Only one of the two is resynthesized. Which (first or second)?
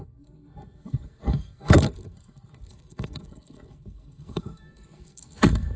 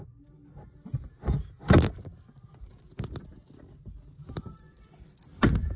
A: first